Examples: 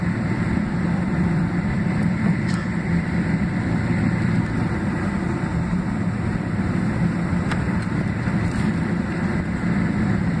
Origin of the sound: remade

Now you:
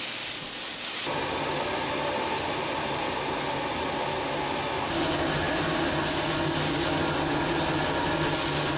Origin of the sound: recorded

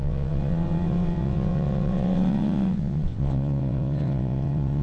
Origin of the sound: remade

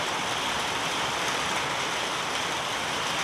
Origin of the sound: recorded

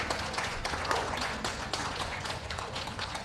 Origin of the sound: remade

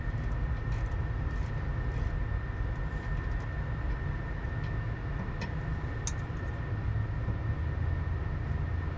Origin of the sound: recorded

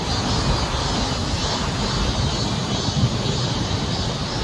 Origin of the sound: recorded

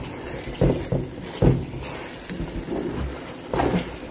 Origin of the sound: recorded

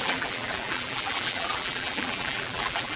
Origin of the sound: remade